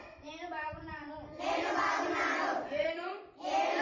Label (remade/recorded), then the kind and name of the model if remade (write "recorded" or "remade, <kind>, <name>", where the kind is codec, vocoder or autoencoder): remade, vocoder, BigVGAN v2